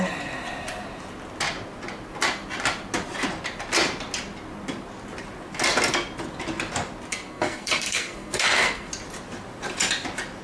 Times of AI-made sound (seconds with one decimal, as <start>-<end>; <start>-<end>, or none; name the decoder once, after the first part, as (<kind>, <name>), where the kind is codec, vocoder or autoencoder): 7.1-8.9 (codec, SNAC)